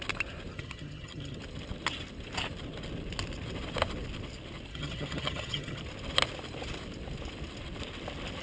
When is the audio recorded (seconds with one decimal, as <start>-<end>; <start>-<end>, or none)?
0.0-0.5; 1.4-4.7; 5.8-8.4